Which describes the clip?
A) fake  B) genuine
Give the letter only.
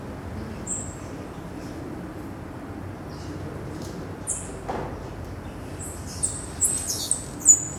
B